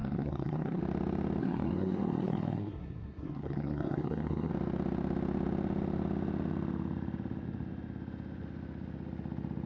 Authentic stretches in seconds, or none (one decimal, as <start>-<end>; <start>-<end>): 0.8-1.4; 4.5-9.7